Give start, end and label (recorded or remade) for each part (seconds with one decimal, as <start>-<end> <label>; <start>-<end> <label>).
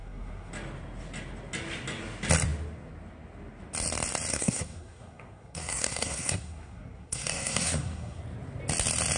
0.0-0.5 remade; 0.5-4.3 recorded; 4.3-8.2 remade; 8.2-9.2 recorded